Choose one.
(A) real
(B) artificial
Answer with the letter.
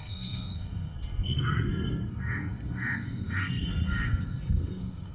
B